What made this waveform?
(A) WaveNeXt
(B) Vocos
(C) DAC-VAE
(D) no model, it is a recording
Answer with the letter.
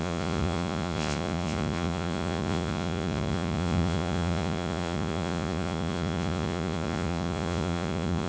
B